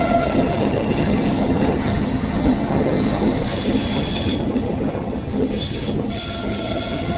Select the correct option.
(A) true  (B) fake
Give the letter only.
B